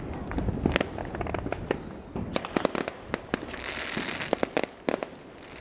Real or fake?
real